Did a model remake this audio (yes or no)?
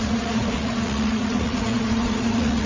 yes